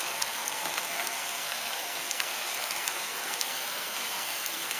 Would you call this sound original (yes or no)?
no